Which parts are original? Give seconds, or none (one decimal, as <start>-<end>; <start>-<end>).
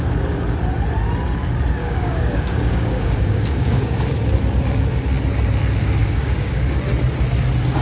0.0-1.8; 4.0-6.0; 6.8-7.8